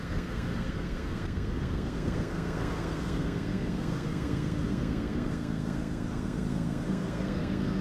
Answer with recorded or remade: remade